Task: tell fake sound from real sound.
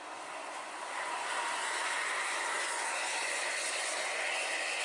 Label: fake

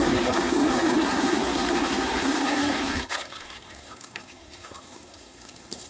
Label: fake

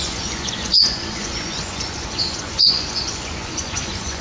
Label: fake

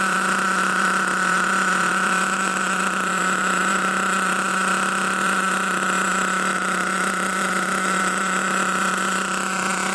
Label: fake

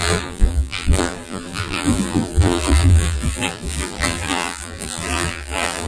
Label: fake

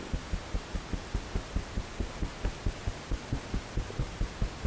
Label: real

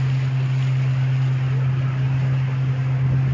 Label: real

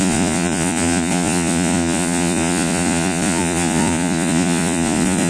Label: fake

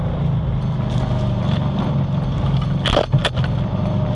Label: real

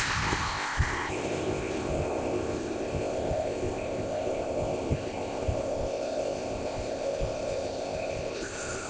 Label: fake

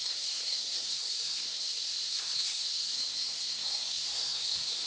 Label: fake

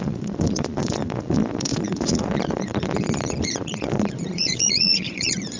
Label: fake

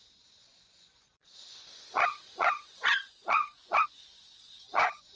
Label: fake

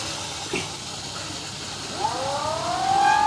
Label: real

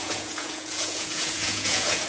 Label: fake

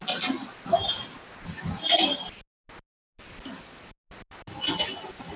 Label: real